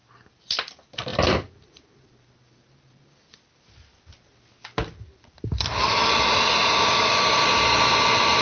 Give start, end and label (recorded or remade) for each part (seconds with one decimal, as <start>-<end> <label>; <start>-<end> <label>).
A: 0.0-1.1 recorded; 1.1-3.1 remade; 3.1-8.4 recorded